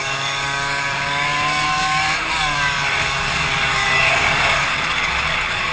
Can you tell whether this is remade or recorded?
remade